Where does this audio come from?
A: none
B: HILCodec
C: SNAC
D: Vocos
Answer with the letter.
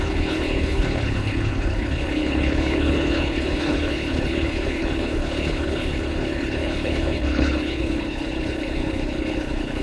B